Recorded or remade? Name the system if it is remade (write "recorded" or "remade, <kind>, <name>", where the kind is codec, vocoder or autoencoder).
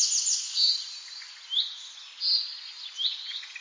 recorded